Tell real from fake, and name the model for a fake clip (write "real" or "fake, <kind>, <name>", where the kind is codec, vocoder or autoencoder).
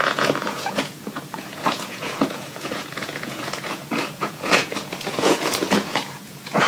fake, vocoder, Vocos